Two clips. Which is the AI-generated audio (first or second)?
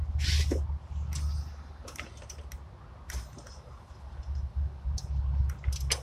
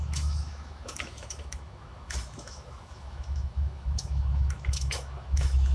second